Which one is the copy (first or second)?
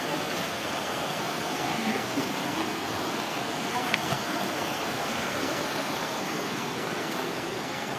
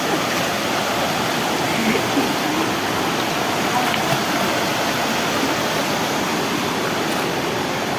first